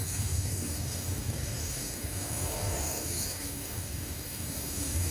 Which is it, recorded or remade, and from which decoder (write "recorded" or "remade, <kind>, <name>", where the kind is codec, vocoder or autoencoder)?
remade, codec, DAC